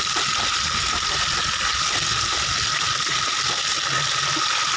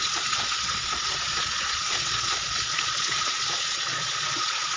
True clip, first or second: first